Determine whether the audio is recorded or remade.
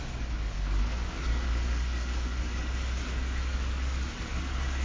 remade